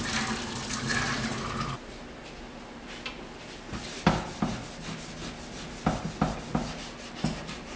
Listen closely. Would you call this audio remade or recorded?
recorded